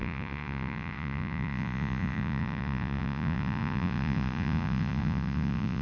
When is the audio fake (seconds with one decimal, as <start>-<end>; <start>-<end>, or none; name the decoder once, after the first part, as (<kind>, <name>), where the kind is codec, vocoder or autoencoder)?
0.0-5.8 (vocoder, Vocos)